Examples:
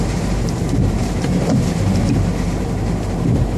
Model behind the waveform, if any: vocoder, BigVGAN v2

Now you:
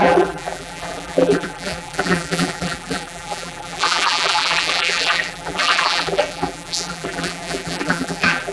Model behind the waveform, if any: vocoder, BigVGAN v2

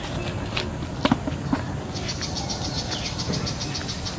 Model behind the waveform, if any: none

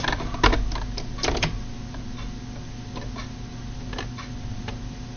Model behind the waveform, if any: none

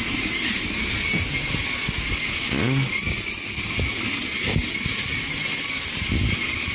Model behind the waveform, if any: none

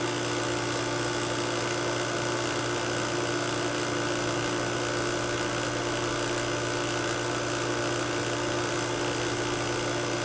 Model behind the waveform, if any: none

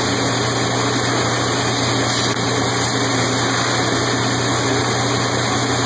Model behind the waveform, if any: none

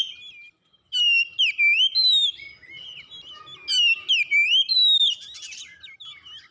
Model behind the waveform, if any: none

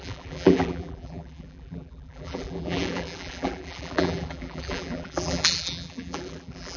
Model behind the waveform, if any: vocoder, BigVGAN v2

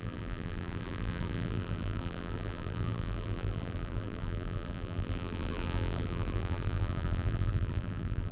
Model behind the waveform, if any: vocoder, BigVGAN v2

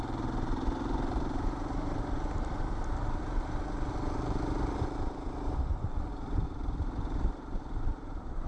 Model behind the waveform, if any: vocoder, BigVGAN v2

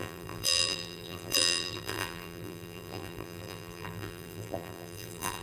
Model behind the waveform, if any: vocoder, BigVGAN v2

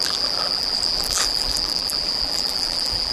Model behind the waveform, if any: vocoder, BigVGAN v2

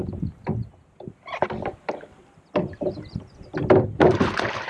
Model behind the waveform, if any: vocoder, BigVGAN v2